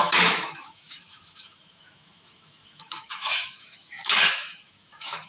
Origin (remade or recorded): remade